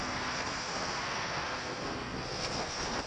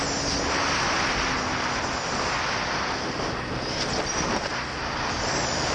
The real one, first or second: second